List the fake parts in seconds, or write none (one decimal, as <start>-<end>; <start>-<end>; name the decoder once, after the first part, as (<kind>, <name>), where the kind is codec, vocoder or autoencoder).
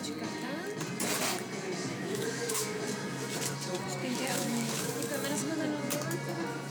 1.9-2.8 (autoencoder, DAC-VAE); 4.0-4.9